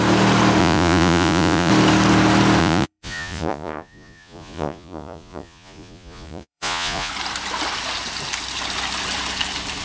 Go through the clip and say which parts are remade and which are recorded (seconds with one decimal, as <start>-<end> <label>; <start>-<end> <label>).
0.0-0.6 recorded; 0.6-1.7 remade; 1.7-2.6 recorded; 2.6-7.1 remade; 7.1-9.8 recorded